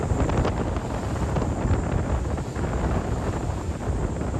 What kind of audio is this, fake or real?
real